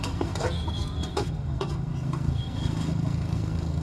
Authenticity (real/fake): fake